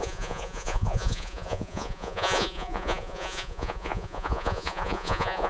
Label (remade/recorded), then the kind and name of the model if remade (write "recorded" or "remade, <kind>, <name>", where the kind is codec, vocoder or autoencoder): remade, vocoder, Vocos